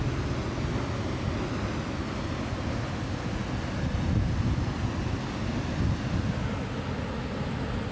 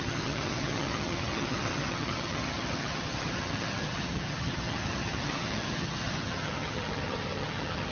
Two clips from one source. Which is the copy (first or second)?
second